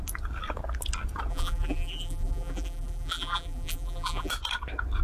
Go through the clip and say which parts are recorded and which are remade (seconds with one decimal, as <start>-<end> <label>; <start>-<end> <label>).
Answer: 0.0-1.3 recorded; 1.3-4.3 remade; 4.3-5.0 recorded